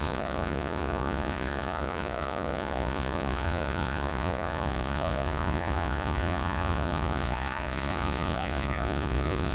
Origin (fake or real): fake